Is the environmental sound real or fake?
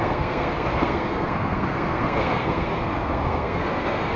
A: fake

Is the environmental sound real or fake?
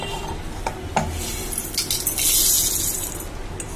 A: real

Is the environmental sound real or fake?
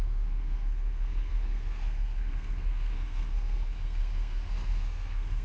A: fake